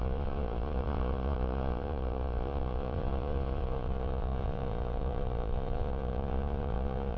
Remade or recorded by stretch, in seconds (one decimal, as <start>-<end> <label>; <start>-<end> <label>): 0.0-7.2 remade